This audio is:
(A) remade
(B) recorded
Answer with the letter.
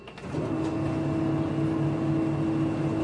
B